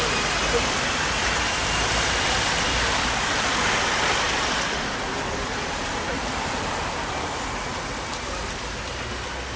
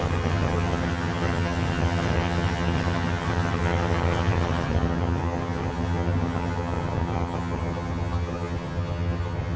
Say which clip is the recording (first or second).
first